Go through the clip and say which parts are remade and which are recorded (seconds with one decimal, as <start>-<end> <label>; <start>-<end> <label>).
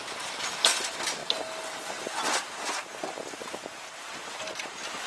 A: 0.0-3.4 recorded; 3.4-4.1 remade; 4.1-5.1 recorded